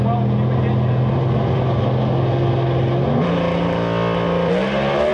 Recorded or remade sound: recorded